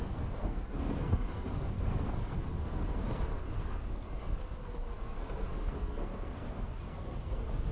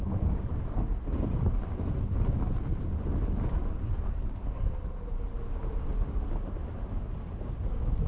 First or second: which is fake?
first